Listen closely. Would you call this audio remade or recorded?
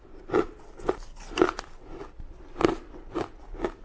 recorded